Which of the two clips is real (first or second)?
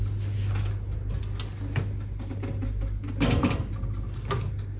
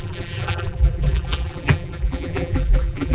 first